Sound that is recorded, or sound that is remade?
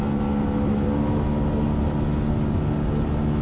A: recorded